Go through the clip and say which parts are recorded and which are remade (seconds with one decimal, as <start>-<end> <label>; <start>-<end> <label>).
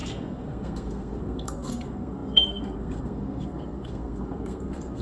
0.0-5.0 remade